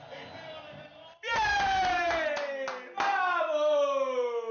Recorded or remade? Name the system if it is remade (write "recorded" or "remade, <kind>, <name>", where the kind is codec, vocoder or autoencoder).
recorded